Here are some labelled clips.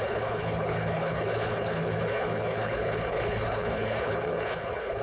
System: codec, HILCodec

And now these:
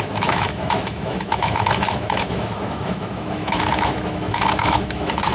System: autoencoder, DAC-VAE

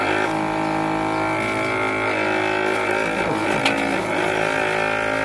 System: none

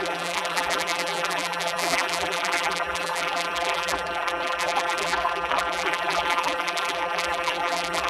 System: vocoder, BigVGAN v2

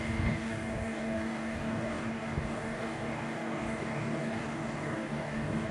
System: codec, DAC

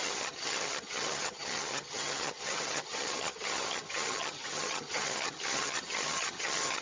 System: vocoder, HiFi-GAN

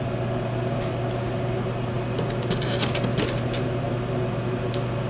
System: none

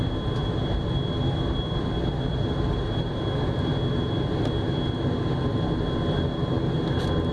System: none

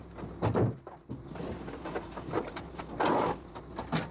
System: none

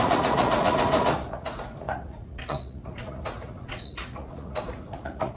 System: vocoder, Vocos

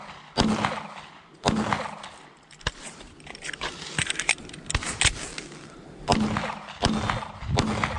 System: none